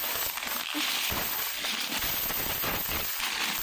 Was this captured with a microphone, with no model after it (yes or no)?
yes